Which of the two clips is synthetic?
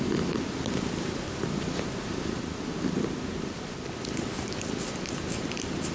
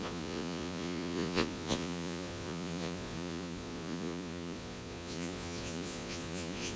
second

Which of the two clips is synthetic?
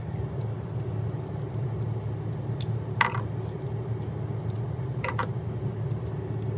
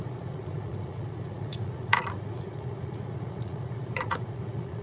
second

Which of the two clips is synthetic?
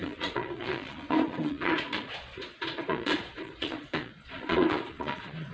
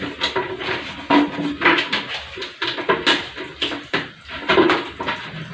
first